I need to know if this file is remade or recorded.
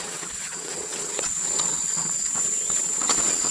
remade